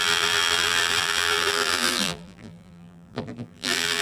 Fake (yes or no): yes